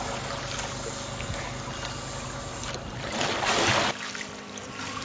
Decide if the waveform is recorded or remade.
recorded